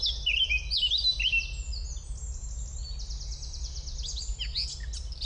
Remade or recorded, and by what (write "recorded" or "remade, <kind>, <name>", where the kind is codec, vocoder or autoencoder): recorded